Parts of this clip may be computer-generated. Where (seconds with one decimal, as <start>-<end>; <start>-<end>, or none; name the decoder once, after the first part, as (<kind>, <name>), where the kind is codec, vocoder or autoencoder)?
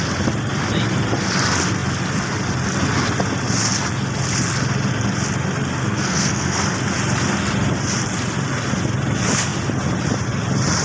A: 5.8-6.6 (codec, SNAC)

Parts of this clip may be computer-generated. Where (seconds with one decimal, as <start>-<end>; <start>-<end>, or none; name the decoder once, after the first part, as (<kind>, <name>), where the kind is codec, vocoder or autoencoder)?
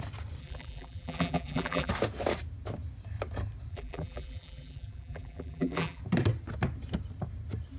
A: 0.4-1.9 (vocoder, BigVGAN v2); 3.7-6.0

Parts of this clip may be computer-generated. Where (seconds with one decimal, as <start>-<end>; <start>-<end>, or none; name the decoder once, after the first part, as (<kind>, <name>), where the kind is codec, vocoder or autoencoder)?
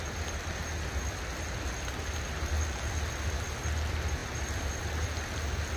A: none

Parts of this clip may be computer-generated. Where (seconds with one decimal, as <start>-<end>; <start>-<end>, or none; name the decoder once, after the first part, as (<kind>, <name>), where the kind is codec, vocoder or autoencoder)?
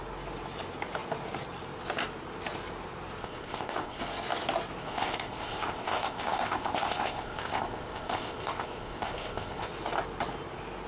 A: 3.2-4.0 (codec, ZipCodec); 4.8-9.7